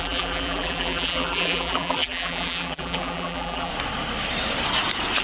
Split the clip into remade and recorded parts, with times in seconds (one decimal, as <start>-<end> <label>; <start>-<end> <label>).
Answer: 0.0-3.7 remade; 3.7-5.2 recorded